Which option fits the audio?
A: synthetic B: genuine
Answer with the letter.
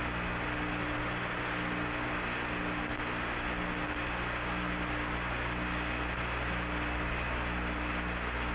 B